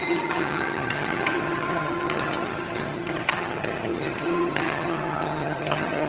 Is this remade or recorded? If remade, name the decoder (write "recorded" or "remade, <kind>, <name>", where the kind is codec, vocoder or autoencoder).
remade, vocoder, HiFi-GAN